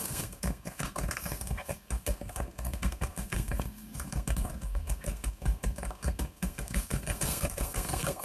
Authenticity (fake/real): fake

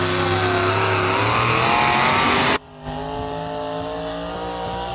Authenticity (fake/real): real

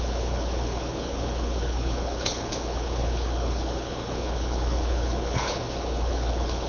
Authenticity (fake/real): fake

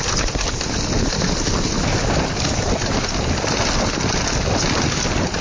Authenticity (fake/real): real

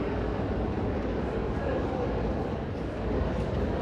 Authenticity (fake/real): fake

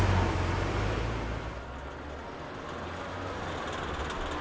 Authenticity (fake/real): real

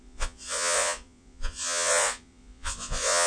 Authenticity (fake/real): fake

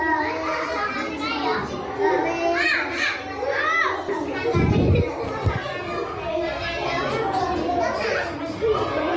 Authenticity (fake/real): real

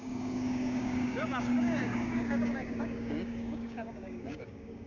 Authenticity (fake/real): fake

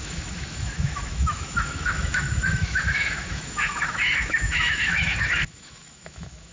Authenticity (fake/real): fake